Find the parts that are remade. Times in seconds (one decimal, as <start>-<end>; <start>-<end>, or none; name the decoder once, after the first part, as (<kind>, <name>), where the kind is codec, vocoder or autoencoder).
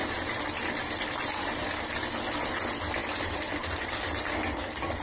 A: 3.0-4.0 (vocoder, BigVGAN v2)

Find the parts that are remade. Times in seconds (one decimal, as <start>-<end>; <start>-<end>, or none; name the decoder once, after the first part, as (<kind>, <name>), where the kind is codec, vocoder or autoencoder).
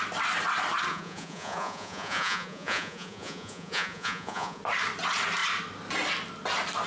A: 0.9-4.6 (vocoder, Vocos)